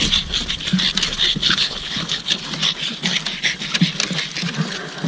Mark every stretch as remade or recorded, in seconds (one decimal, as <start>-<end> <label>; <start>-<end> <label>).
0.0-1.3 recorded; 1.3-2.4 remade; 2.4-5.1 recorded